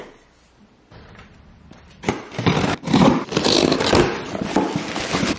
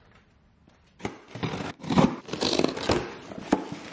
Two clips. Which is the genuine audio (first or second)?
second